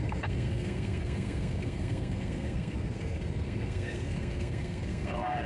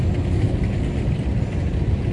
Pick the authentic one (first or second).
second